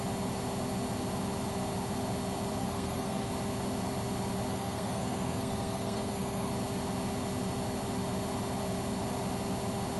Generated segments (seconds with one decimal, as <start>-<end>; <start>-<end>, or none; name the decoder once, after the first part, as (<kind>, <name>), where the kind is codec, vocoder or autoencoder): 2.6-3.3 (codec, SNAC); 4.5-6.5